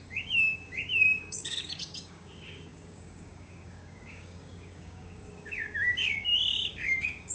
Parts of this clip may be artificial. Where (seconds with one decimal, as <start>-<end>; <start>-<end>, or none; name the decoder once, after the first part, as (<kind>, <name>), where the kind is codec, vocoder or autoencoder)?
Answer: 0.0-7.3 (codec, DAC)